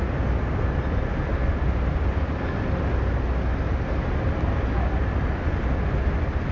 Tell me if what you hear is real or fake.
real